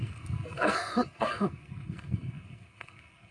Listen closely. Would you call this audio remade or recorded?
remade